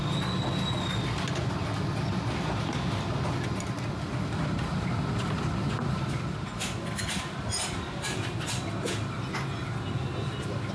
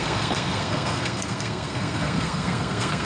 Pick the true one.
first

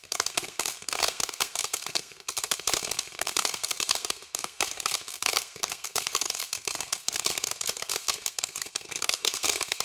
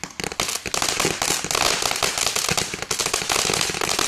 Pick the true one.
second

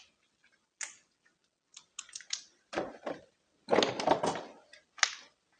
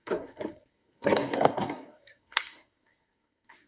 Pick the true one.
first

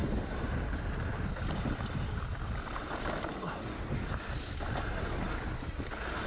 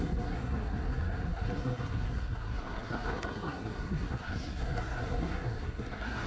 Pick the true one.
first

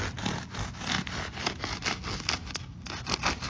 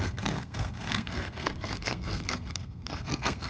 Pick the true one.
first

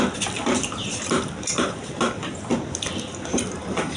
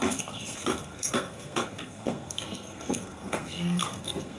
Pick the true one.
first